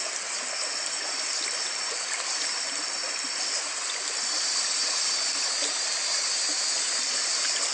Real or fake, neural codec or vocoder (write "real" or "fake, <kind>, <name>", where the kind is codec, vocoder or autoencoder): real